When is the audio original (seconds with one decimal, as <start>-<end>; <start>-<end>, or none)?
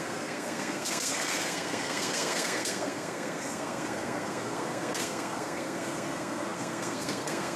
none